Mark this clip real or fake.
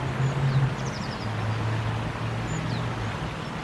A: real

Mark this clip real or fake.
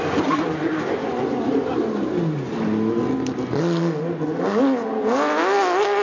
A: real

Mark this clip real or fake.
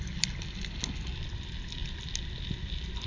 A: real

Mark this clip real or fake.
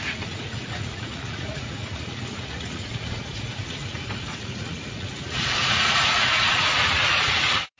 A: fake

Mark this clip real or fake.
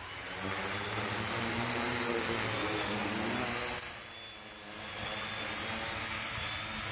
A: real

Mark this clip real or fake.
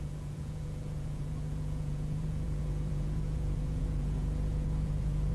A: fake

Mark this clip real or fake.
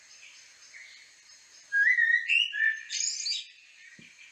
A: real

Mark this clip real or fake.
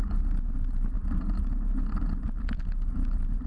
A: real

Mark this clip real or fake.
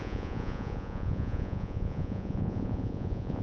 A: fake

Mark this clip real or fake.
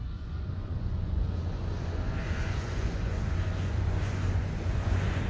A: fake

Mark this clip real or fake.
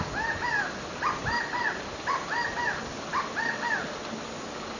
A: real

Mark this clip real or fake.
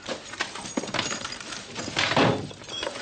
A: real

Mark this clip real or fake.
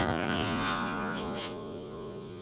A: fake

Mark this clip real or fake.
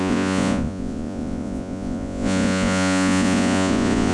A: fake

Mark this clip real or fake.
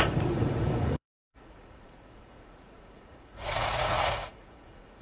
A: fake